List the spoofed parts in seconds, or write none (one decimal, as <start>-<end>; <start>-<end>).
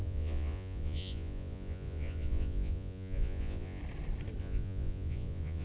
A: 0.0-3.8; 4.4-5.6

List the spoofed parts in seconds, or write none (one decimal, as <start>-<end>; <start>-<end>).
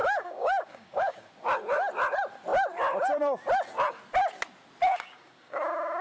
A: 0.0-1.3; 4.9-6.0